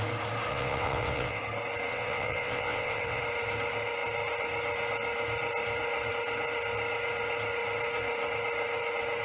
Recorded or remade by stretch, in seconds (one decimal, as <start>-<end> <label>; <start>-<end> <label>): 0.0-0.5 recorded; 0.5-1.4 remade; 1.4-1.9 recorded; 1.9-3.2 remade; 3.2-9.2 recorded